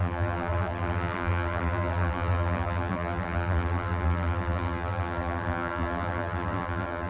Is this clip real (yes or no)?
no